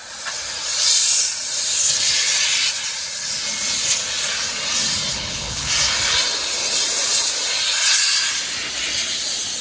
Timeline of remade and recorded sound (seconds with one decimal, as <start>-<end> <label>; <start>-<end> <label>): 0.0-5.1 recorded; 5.1-5.7 remade; 5.7-9.6 recorded